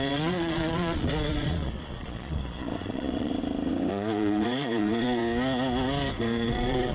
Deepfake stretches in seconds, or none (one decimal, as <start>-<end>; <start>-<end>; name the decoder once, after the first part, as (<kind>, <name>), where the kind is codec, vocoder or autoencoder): 0.0-3.3 (vocoder, Vocos); 3.9-5.2; 6.2-6.9

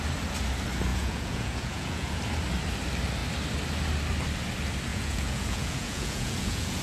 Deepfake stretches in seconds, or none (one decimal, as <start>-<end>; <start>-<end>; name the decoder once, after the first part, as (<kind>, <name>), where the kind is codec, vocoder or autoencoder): 0.9-2.2 (vocoder, Vocos); 4.9-6.8

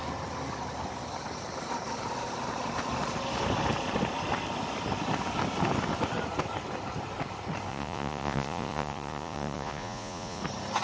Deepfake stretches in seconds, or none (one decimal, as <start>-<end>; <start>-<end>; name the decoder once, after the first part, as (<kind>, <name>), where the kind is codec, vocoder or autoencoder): 7.7-10.4 (vocoder, Vocos)